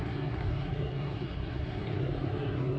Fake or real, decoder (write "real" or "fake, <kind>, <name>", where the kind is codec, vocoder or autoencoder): fake, codec, SNAC